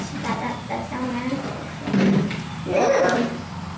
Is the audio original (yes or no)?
yes